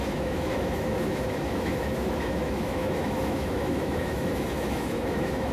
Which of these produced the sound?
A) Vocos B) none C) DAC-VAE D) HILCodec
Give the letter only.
C